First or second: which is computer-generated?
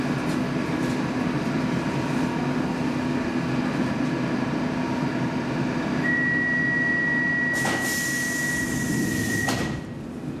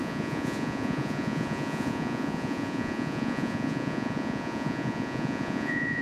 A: second